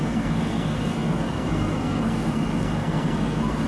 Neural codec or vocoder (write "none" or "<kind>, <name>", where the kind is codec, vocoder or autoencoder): codec, SNAC